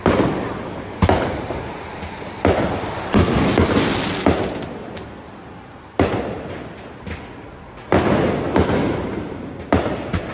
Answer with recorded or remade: recorded